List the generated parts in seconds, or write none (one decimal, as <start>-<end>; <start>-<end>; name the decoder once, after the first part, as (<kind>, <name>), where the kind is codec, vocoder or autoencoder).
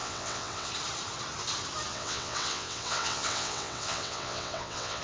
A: 0.0-0.7 (vocoder, WaveNeXt); 1.9-5.0